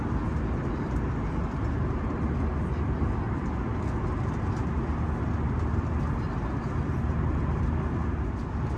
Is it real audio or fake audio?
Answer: real